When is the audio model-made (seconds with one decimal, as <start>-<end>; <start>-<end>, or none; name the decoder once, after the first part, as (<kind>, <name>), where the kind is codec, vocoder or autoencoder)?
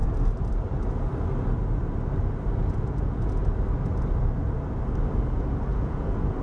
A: 2.6-3.4 (vocoder, Vocos); 5.7-6.4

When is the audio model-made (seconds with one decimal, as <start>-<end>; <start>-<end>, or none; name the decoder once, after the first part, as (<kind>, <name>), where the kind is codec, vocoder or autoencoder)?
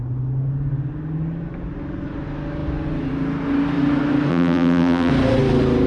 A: 4.3-5.1 (vocoder, BigVGAN v2)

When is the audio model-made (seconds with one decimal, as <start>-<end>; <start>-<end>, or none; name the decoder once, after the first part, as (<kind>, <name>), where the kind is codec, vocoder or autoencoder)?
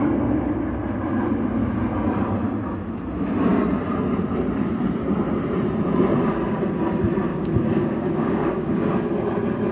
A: 7.3-8.9 (codec, DAC)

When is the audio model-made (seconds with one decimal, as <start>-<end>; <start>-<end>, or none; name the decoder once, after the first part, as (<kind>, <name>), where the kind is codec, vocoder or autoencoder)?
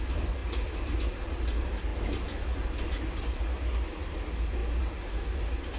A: none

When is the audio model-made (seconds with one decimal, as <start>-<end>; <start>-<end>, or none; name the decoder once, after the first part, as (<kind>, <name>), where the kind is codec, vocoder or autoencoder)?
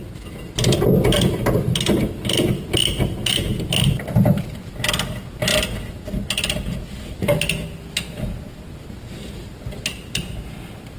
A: 2.8-4.7 (vocoder, BigVGAN v2)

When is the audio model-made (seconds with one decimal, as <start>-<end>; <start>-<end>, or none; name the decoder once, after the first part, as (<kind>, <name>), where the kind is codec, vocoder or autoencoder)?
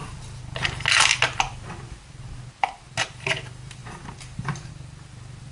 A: none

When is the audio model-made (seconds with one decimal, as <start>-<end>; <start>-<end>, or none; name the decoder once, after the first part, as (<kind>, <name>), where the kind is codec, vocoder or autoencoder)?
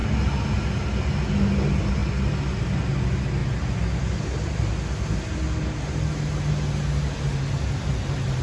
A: none